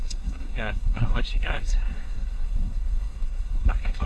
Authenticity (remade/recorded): remade